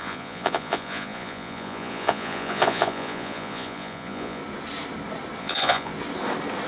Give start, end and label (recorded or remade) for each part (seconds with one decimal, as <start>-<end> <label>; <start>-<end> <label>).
0.0-4.4 remade; 4.4-5.4 recorded; 5.4-5.9 remade; 5.9-6.7 recorded